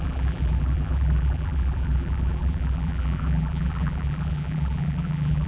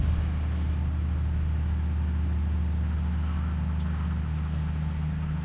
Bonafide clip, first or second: second